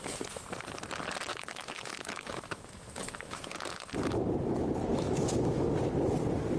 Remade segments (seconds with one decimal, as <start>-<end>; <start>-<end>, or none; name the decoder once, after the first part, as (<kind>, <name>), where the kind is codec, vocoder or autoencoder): 1.3-3.9 (autoencoder, DAC-VAE); 4.9-5.7